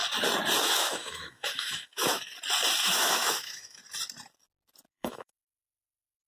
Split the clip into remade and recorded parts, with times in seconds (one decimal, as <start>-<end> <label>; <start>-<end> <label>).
0.0-0.6 recorded; 0.6-2.3 remade; 2.3-2.8 recorded; 2.8-3.8 remade; 3.8-4.9 recorded; 4.9-6.3 remade